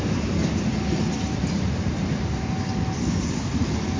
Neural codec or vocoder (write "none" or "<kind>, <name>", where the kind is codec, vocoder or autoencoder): none